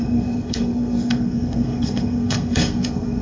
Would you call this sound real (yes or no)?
no